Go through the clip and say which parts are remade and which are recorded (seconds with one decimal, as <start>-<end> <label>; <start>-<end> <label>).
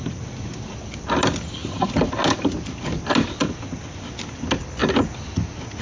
0.0-5.8 recorded